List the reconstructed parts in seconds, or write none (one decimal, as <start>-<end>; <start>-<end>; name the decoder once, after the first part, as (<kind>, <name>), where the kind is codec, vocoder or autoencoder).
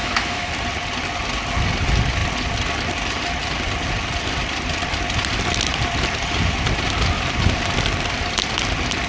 0.0-0.5 (autoencoder, DAC-VAE)